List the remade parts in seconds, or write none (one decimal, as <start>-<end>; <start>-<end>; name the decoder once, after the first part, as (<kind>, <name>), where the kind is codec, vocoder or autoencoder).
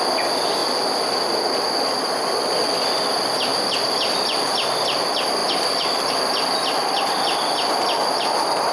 none